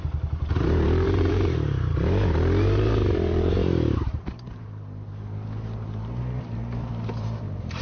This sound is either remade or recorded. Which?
remade